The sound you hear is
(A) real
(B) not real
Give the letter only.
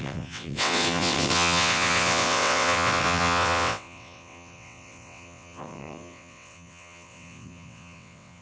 B